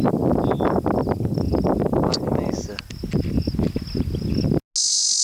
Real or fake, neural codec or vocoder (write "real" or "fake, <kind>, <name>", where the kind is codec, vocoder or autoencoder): real